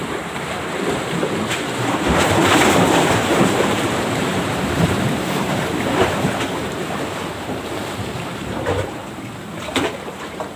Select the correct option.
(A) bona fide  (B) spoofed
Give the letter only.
B